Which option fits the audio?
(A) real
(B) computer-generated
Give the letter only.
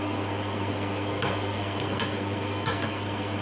B